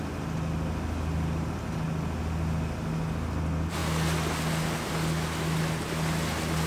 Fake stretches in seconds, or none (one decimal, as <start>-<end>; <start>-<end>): none